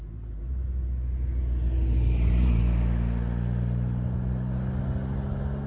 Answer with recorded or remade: recorded